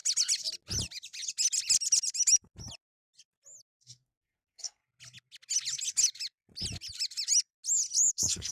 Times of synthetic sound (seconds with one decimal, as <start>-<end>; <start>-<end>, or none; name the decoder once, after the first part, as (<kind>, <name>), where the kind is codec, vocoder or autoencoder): 3.7-4.8 (codec, SNAC); 8.1-8.5